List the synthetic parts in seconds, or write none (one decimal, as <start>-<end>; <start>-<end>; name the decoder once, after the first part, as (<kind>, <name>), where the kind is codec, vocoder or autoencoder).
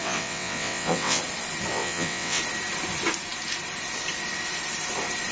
0.0-1.2 (vocoder, WaveNeXt); 1.7-2.4